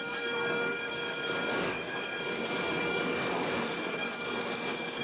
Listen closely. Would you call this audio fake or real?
fake